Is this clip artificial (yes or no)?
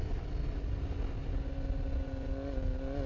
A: no